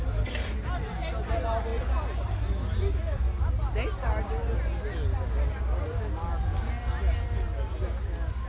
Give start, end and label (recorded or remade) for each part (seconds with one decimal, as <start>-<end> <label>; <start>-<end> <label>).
0.0-8.5 recorded